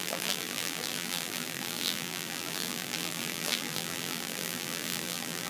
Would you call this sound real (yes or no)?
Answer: no